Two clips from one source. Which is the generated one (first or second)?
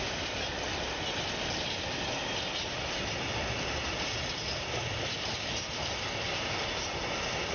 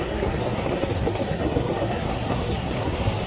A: second